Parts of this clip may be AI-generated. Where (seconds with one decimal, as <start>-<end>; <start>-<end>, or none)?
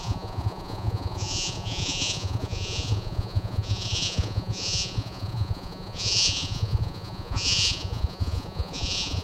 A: 0.0-9.2